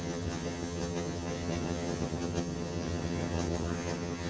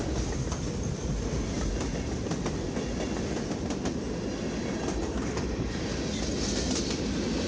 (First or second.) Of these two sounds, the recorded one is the second